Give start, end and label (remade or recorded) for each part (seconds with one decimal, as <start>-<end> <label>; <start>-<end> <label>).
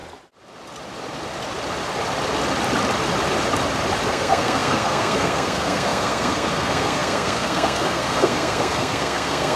0.0-4.1 recorded; 4.1-9.6 remade